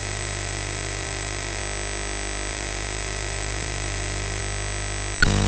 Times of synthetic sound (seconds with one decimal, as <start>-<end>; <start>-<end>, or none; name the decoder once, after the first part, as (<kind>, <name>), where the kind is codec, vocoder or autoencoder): 0.0-1.6 (vocoder, BigVGAN v2); 2.5-4.4